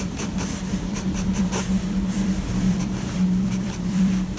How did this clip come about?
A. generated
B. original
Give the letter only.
A